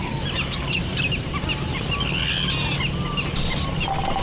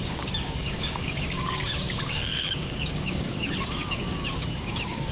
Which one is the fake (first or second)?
second